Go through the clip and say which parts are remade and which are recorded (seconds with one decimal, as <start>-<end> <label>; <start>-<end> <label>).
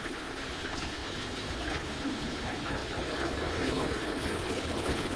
0.0-5.2 remade